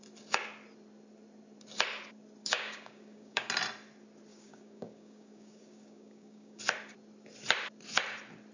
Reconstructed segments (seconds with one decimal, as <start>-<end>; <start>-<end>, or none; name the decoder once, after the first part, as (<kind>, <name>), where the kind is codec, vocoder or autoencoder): 2.4-3.5 (codec, DAC); 4.3-6.6